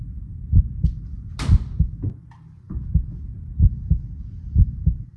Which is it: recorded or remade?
recorded